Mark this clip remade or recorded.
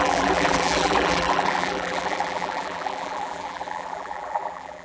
remade